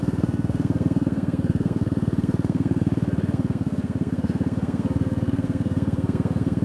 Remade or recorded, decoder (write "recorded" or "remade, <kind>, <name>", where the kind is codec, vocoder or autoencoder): remade, codec, SNAC